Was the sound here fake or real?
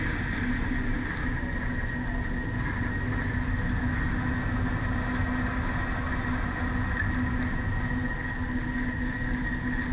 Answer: real